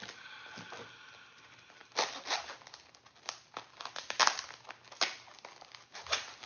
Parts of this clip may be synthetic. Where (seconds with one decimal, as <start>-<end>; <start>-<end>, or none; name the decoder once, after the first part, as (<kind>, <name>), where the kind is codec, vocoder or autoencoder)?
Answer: none